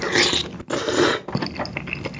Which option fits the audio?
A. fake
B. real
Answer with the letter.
B